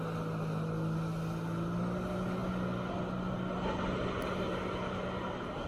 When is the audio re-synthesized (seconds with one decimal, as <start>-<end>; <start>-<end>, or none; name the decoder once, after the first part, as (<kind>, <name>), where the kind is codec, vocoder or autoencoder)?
none